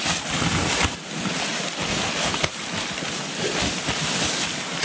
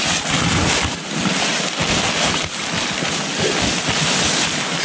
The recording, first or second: second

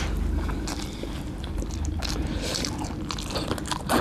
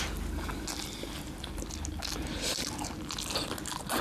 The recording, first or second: second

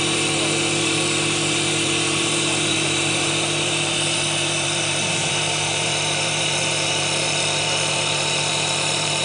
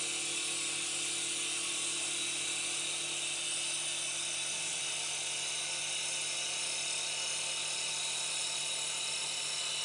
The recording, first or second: second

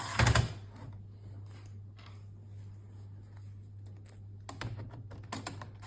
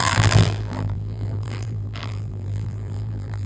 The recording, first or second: first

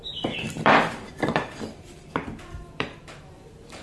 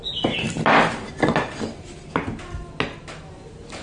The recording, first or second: second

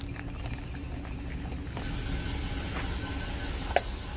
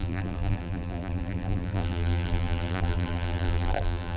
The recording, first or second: first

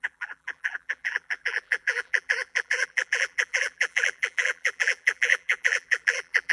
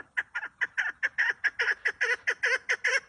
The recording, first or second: second